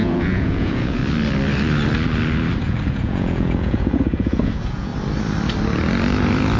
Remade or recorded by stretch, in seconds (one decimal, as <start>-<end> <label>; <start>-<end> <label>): 0.0-1.0 remade; 1.0-2.6 recorded; 2.6-4.9 remade; 4.9-6.6 recorded